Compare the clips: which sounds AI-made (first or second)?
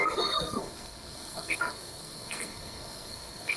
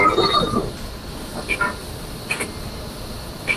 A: first